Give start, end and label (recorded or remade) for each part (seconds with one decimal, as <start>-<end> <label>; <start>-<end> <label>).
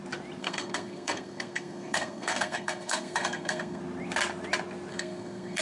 0.0-0.4 recorded; 0.4-3.8 remade; 3.8-4.9 recorded; 4.9-5.6 remade